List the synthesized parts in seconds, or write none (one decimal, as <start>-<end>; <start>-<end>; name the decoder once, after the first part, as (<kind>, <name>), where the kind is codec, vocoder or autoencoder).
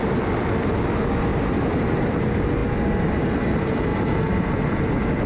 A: 1.3-2.2 (vocoder, BigVGAN v2)